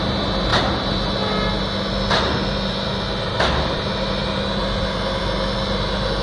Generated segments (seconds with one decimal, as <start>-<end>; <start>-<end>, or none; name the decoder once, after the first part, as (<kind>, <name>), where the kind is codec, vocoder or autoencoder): none